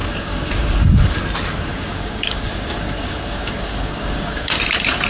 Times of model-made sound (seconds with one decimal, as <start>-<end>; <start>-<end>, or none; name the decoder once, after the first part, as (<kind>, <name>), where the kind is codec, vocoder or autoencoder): 0.0-1.2 (codec, DAC); 1.7-4.6